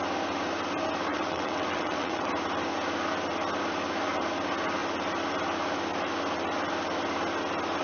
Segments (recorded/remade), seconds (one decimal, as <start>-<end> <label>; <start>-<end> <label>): 0.0-1.1 recorded; 1.1-2.3 remade; 2.3-7.8 recorded